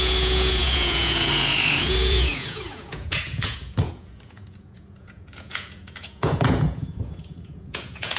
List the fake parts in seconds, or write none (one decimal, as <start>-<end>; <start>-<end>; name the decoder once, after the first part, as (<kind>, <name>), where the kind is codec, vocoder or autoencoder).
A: 0.0-8.2 (vocoder, Vocos)